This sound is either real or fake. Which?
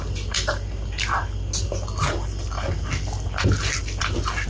real